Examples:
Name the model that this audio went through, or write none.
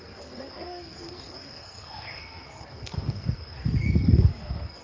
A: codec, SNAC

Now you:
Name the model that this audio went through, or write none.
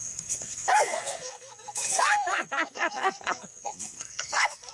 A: codec, SNAC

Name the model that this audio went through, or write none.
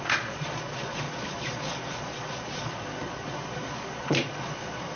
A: vocoder, Vocos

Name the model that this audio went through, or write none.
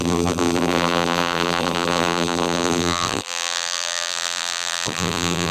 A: vocoder, BigVGAN v2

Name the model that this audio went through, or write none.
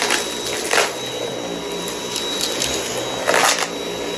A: none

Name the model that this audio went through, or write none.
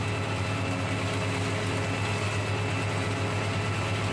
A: none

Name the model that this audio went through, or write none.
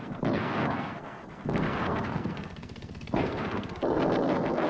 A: codec, SNAC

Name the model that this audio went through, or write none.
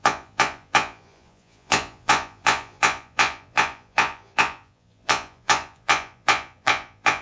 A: vocoder, Vocos